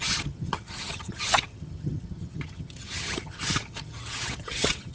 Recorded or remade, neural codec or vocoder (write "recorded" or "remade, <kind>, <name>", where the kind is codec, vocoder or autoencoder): remade, vocoder, HiFi-GAN